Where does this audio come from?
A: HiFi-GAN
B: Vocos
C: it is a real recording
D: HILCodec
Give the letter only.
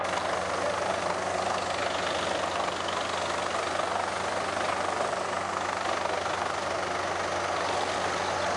C